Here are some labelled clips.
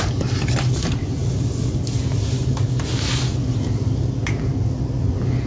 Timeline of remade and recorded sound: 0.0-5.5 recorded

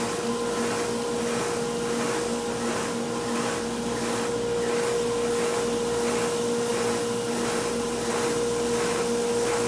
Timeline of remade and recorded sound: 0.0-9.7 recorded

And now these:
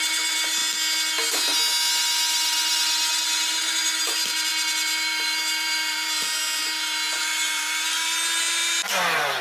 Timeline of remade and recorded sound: 0.0-0.6 remade; 0.6-3.1 recorded; 3.1-9.4 remade